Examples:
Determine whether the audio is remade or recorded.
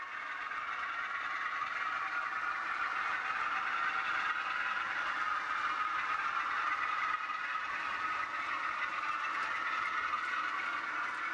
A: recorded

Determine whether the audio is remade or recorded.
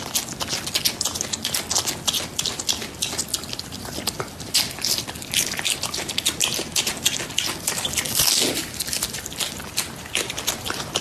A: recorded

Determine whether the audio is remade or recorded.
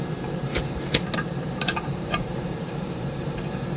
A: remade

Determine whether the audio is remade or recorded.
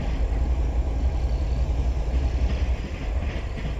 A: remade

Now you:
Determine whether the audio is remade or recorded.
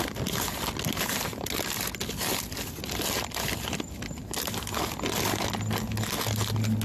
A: recorded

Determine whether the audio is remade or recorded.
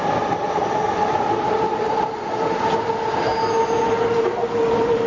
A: recorded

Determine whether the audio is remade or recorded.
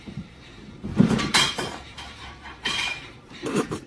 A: remade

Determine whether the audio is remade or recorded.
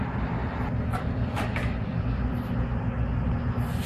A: recorded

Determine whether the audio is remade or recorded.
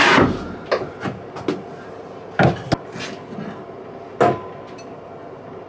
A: recorded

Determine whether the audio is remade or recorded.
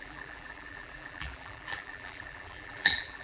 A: remade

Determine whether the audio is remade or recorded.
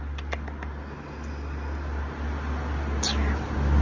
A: recorded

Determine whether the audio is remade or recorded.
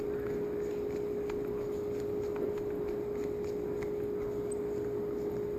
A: recorded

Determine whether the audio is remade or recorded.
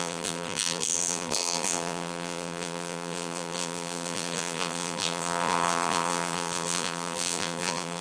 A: remade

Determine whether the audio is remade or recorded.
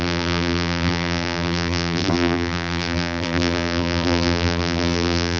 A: remade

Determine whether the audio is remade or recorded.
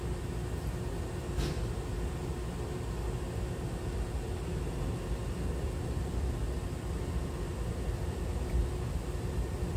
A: recorded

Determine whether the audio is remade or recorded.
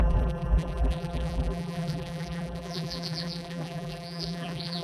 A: remade